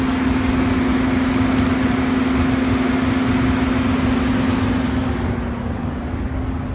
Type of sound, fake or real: real